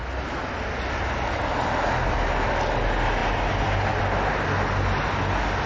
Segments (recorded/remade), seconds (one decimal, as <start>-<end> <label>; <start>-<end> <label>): 0.0-5.7 recorded